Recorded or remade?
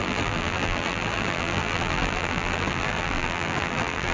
remade